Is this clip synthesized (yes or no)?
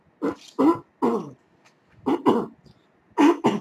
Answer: no